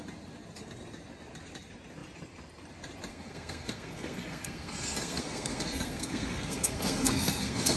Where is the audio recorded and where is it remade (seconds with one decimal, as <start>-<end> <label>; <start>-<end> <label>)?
0.0-3.1 recorded; 3.1-7.8 remade